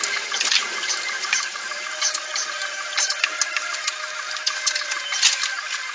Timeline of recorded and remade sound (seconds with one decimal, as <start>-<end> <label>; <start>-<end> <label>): 0.0-5.9 recorded